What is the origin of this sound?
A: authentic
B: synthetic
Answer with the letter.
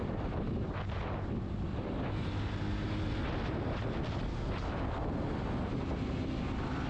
A